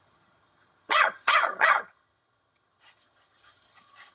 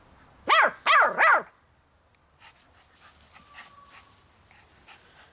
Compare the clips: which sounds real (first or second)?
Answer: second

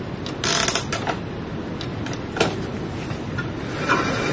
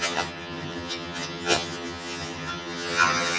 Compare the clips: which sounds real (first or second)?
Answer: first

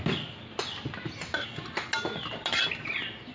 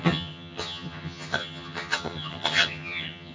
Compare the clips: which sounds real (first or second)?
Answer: first